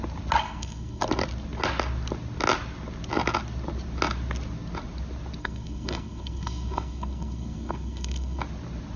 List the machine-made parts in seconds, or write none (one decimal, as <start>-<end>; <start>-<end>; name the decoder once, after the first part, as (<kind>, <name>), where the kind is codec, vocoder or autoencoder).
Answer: 0.4-1.0 (codec, SNAC); 5.4-8.4